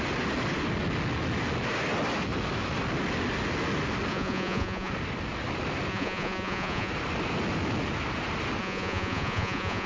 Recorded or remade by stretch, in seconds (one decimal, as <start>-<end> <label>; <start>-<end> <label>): 0.0-4.1 recorded; 4.1-4.9 remade; 4.9-5.9 recorded; 5.9-6.9 remade; 6.9-8.6 recorded; 8.6-9.9 remade